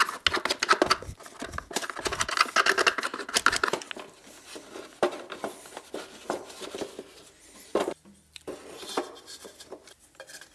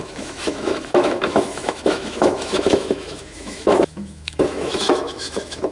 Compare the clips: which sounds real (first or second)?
first